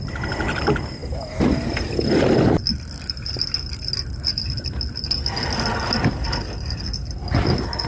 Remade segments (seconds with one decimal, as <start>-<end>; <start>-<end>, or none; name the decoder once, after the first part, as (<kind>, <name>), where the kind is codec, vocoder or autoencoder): none